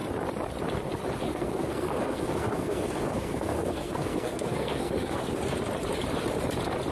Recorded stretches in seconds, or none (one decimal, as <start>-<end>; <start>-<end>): 0.0-1.3; 5.4-6.9